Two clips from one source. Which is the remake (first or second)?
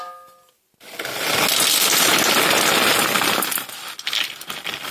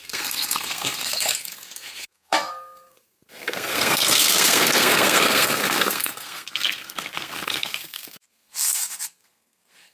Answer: second